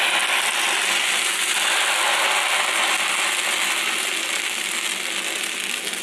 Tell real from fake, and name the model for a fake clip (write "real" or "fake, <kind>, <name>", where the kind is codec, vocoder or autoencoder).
real